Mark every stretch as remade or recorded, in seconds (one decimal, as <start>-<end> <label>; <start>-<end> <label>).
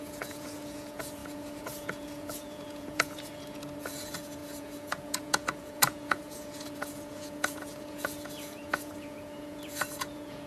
0.0-10.5 remade